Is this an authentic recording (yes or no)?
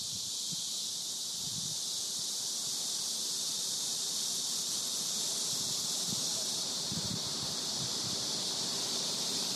no